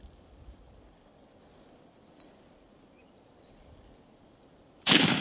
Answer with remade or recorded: remade